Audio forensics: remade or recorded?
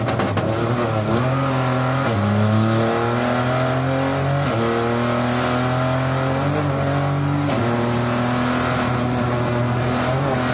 recorded